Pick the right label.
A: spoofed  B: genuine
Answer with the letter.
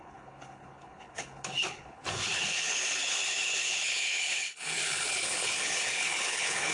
A